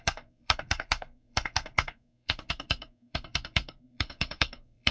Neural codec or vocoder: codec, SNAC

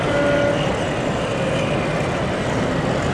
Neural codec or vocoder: none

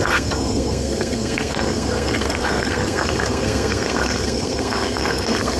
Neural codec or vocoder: codec, SNAC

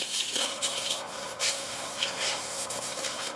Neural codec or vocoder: codec, SNAC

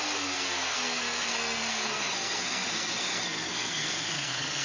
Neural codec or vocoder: codec, SNAC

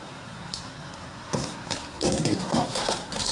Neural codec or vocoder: codec, SNAC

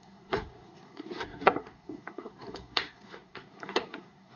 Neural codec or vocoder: codec, SNAC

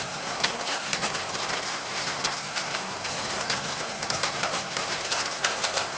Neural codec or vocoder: codec, SNAC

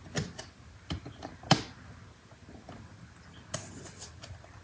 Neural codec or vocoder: none